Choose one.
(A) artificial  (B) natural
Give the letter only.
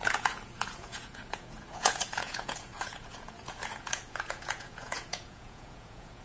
A